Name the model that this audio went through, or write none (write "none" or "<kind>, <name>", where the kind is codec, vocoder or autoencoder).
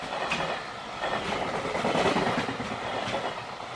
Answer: none